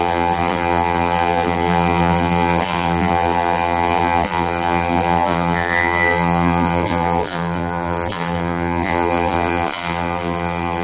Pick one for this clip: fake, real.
fake